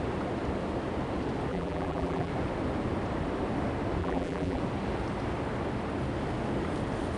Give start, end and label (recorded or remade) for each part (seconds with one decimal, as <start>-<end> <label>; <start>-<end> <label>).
0.0-1.5 recorded; 1.5-2.3 remade; 2.3-4.0 recorded; 4.0-4.6 remade; 4.6-7.2 recorded